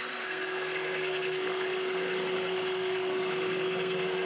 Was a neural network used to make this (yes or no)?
yes